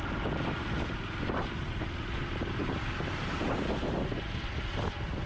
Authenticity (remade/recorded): recorded